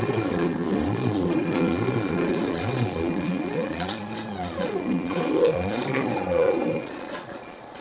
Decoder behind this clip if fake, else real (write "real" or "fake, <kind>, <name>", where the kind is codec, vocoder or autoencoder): fake, vocoder, Vocos